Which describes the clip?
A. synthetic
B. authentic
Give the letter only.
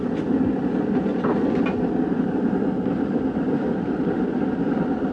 B